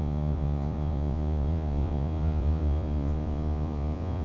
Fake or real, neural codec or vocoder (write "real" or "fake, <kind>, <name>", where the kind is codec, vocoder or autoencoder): fake, vocoder, Vocos